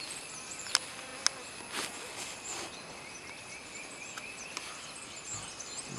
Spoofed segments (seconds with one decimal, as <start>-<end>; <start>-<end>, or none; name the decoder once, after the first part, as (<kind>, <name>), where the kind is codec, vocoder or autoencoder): none